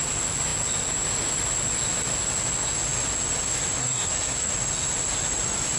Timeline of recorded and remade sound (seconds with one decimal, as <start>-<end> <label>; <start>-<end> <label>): 0.0-3.8 recorded; 3.8-4.5 remade; 4.5-5.8 recorded